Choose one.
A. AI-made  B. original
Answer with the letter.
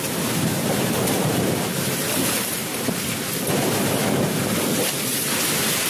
B